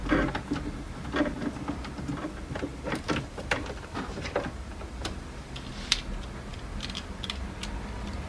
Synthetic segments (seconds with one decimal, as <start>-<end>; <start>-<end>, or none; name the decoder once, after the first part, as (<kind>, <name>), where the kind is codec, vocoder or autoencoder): 2.7-5.7 (vocoder, BigVGAN v2); 6.5-7.2